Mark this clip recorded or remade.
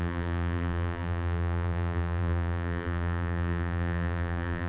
remade